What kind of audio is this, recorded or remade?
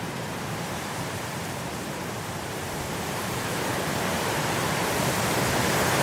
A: remade